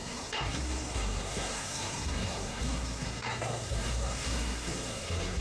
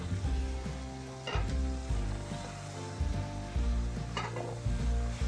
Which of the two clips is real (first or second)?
second